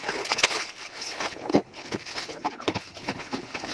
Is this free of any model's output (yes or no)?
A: no